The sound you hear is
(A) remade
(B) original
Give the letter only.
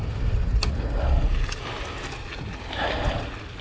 B